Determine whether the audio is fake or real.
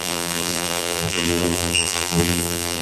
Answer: fake